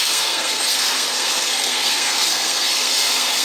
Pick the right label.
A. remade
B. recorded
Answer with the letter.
A